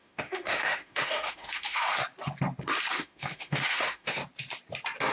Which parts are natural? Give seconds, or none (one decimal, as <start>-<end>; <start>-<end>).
2.0-2.9; 4.2-5.1